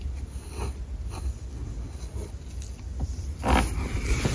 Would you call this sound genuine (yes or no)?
yes